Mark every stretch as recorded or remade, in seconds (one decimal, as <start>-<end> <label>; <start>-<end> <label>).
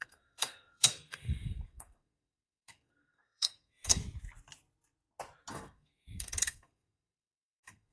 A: 0.0-4.0 remade; 4.0-5.5 recorded; 5.5-7.9 remade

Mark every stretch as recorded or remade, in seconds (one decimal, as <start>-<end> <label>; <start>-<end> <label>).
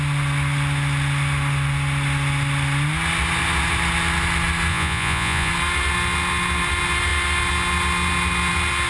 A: 0.0-4.7 recorded; 4.7-5.5 remade; 5.5-8.9 recorded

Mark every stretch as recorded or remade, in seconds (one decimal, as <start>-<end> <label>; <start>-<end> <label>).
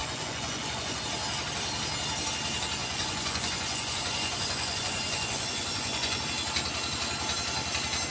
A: 0.0-1.0 remade; 1.0-2.8 recorded; 2.8-6.2 remade; 6.2-8.1 recorded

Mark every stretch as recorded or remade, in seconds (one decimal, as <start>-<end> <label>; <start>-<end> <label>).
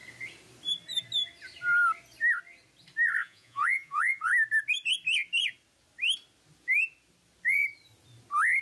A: 0.0-3.2 recorded; 3.2-4.3 remade; 4.3-8.6 recorded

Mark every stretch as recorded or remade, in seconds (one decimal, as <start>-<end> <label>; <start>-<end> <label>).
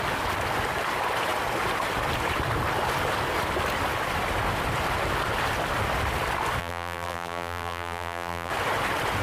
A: 0.0-6.6 recorded; 6.6-8.5 remade; 8.5-9.2 recorded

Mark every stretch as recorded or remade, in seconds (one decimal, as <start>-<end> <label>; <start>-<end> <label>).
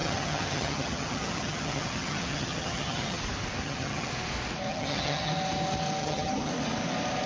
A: 0.0-3.2 remade; 3.2-3.6 recorded; 3.6-4.1 remade; 4.1-4.7 recorded; 4.7-5.3 remade; 5.3-6.0 recorded; 6.0-6.5 remade; 6.5-7.3 recorded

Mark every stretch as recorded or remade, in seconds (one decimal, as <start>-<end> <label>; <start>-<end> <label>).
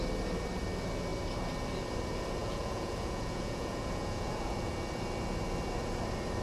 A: 0.0-2.4 recorded; 2.4-4.7 remade; 4.7-6.4 recorded